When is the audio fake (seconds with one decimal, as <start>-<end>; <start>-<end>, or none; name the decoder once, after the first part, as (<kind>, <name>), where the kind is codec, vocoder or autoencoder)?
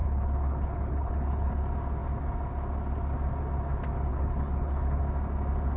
0.0-1.5 (codec, HILCodec); 4.1-5.0